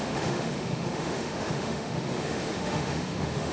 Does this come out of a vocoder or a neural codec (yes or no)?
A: yes